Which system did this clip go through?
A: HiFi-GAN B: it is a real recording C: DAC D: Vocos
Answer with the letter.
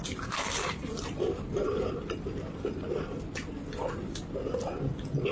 B